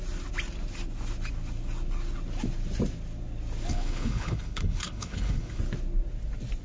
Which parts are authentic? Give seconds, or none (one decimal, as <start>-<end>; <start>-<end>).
0.0-3.7; 5.6-6.6